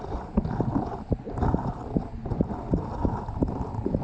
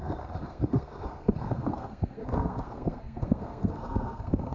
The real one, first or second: first